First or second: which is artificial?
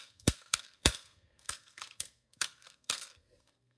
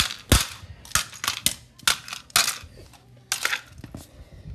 first